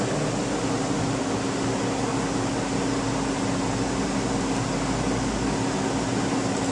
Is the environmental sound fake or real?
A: real